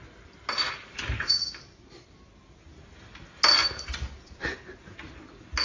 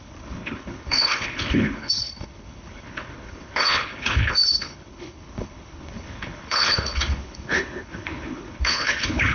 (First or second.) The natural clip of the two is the first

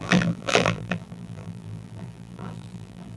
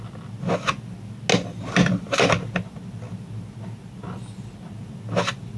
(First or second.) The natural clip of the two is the second